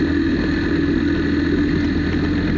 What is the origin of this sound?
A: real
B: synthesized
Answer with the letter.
A